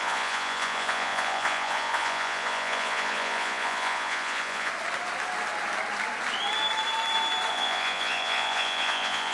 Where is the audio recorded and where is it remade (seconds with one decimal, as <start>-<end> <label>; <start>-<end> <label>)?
0.0-4.7 remade; 4.7-7.5 recorded; 7.5-9.3 remade